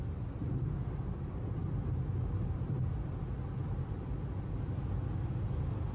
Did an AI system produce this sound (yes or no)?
no